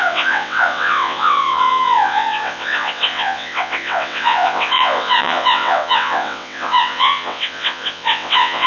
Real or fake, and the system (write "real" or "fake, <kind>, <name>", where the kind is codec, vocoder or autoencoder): fake, vocoder, WaveNeXt